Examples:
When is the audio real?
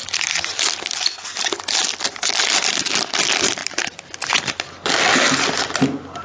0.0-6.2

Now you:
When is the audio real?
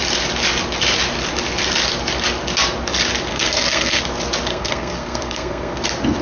0.0-3.3; 4.0-4.5; 5.8-6.2